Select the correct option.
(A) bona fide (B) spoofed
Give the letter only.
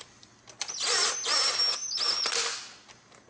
A